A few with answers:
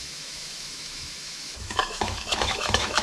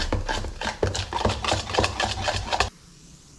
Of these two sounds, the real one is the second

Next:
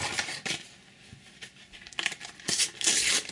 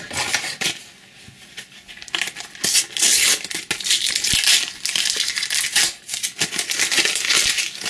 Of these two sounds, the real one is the second